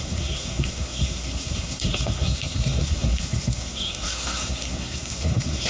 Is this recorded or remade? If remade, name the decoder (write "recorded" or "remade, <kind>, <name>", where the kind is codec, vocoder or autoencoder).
remade, codec, SNAC